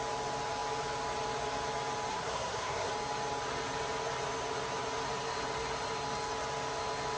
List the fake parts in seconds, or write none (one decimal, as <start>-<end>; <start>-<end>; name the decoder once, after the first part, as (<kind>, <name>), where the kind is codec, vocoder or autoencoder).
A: 2.1-2.9 (codec, SNAC)

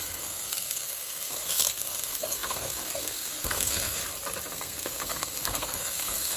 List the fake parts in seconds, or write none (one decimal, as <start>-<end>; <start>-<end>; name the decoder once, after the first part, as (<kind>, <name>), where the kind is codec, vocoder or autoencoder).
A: 0.0-4.0 (codec, SNAC); 4.5-6.4